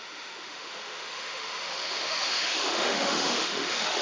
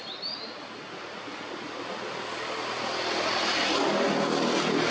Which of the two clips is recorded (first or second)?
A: second